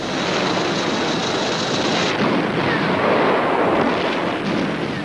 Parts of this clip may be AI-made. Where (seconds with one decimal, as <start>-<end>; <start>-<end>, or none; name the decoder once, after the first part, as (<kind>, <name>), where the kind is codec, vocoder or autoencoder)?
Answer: none